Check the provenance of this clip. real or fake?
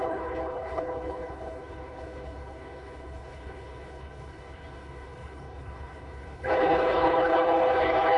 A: fake